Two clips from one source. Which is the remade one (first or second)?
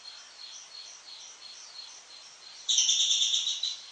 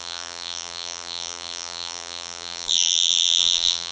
second